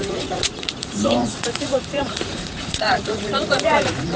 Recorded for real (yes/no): no